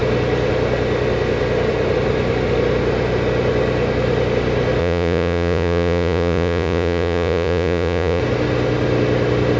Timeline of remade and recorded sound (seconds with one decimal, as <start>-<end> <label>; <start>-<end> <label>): 0.0-4.8 recorded; 4.8-8.2 remade; 8.2-9.6 recorded